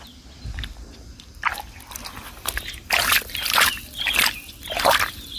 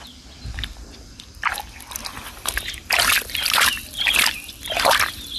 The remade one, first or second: second